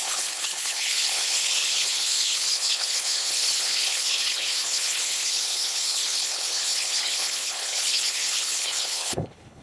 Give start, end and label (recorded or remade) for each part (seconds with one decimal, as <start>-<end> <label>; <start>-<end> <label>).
0.0-9.6 remade